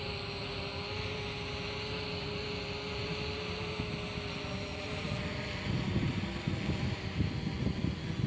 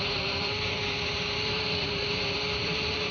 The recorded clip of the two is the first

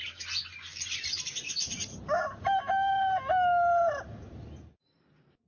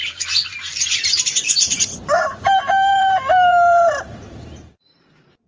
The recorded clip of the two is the first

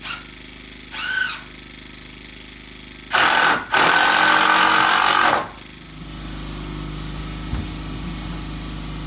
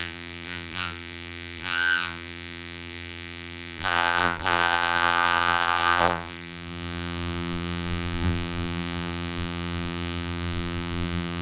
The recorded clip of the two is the first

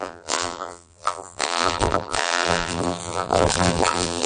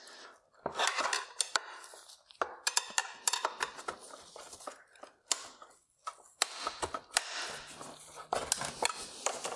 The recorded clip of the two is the second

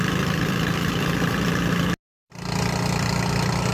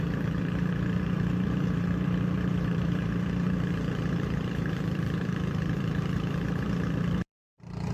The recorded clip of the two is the first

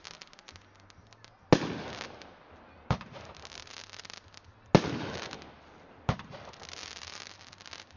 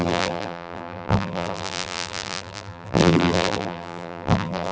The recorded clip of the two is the first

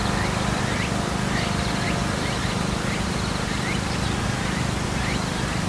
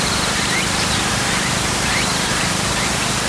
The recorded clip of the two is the first